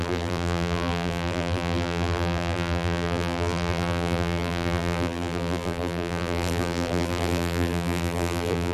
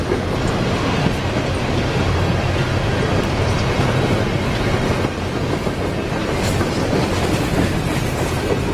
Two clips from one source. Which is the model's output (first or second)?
first